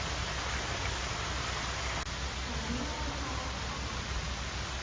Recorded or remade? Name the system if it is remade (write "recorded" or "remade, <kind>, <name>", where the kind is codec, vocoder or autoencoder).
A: recorded